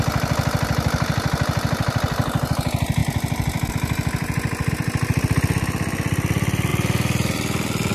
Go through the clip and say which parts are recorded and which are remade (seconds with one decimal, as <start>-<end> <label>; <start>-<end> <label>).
0.0-7.9 recorded